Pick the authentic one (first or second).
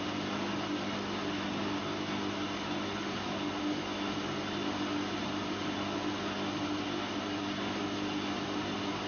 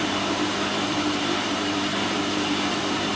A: first